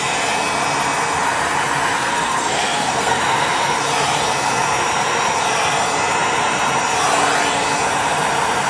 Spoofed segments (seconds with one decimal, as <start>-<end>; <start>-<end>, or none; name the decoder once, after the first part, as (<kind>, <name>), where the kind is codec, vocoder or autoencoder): 2.0-3.2 (codec, SNAC)